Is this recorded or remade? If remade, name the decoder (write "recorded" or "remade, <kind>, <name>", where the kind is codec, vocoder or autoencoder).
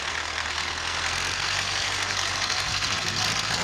remade, codec, SNAC